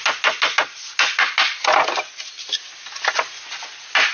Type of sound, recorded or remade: recorded